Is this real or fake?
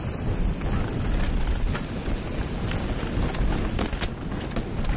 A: real